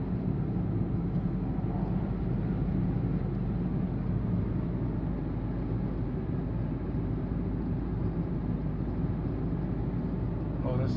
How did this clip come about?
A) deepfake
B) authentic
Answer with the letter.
B